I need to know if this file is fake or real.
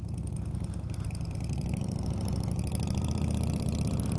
real